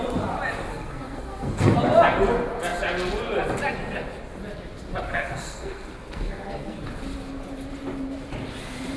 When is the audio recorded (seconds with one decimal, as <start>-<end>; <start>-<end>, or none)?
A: 0.0-0.7; 1.8-5.1; 6.8-9.0